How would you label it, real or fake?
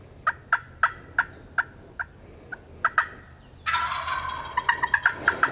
real